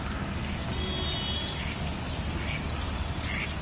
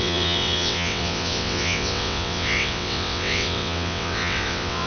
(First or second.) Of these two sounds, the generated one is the second